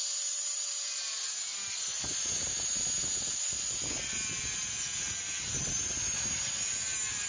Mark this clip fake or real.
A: real